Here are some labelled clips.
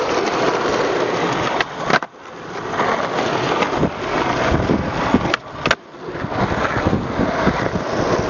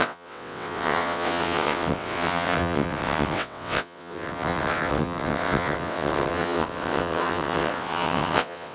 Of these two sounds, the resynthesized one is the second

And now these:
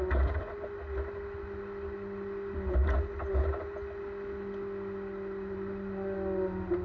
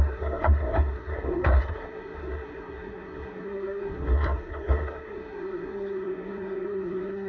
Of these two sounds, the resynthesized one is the second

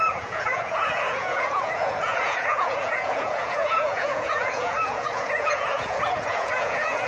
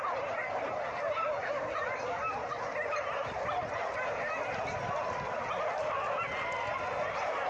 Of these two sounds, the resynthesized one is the first